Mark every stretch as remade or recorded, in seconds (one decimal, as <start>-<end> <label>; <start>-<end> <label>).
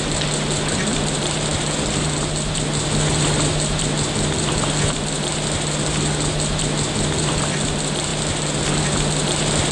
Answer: 0.0-9.7 recorded